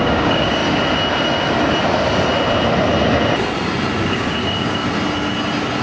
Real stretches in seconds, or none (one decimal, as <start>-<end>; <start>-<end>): 0.6-4.1; 4.8-5.8